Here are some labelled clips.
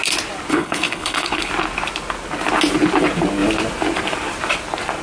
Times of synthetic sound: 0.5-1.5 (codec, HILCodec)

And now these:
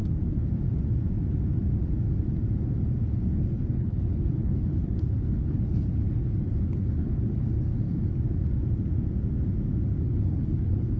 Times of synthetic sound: 3.0-7.7 (codec, HILCodec); 10.0-11.0

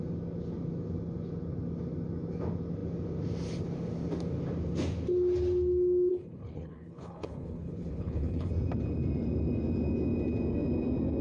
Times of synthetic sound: 6.1-8.5 (codec, HILCodec)

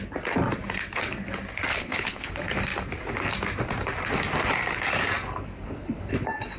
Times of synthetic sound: 1.7-2.3 (codec, HILCodec); 5.6-6.1

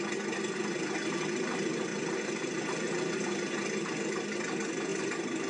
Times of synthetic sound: none